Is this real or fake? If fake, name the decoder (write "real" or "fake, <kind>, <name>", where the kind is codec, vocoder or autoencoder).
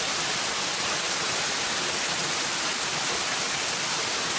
real